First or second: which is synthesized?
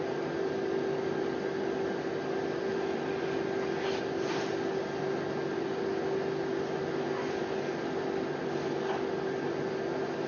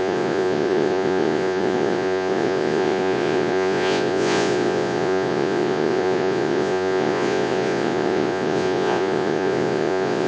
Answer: second